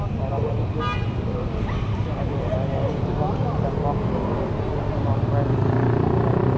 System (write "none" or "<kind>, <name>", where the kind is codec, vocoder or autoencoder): none